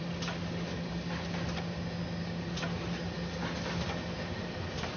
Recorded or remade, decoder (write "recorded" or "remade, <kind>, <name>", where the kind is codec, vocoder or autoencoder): recorded